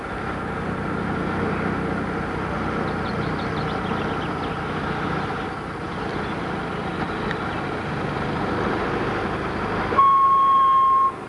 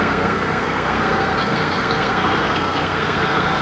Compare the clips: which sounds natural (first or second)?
first